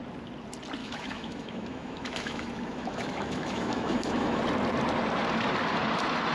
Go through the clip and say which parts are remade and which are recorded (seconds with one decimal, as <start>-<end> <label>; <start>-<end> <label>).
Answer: 0.0-0.8 recorded; 0.8-4.4 remade; 4.4-6.3 recorded